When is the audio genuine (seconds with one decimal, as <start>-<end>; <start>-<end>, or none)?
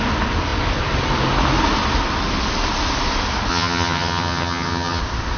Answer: 0.0-3.5; 5.0-5.4